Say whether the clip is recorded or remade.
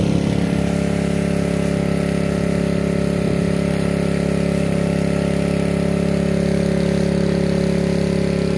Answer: recorded